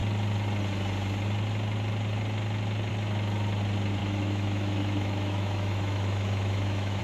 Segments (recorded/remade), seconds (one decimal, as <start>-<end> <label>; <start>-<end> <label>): 0.0-4.0 recorded; 4.0-7.0 remade